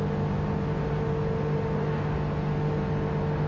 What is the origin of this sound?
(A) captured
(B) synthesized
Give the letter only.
A